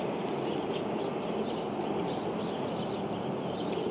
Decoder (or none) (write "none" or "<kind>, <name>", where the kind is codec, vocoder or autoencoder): none